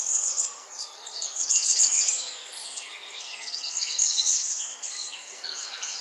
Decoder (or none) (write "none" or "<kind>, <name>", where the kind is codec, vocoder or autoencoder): codec, SNAC